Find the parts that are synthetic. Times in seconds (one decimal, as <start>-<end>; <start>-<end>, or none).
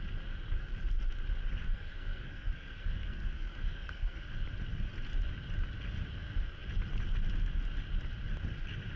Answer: 1.6-4.2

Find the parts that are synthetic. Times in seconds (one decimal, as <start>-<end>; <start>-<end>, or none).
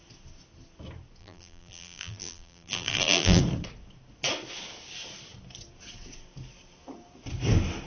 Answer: 1.2-3.4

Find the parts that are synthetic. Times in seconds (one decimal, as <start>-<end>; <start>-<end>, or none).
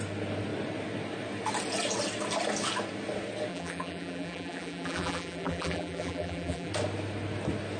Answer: 3.5-6.7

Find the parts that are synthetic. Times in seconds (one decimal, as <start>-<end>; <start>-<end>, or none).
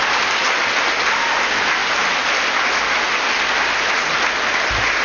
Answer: none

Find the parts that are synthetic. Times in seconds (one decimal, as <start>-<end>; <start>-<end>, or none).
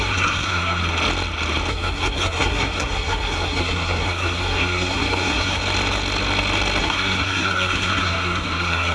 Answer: 0.0-0.8; 1.7-5.6; 6.8-8.9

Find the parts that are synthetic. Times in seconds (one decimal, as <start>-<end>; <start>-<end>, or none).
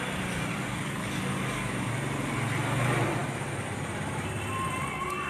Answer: 0.5-1.9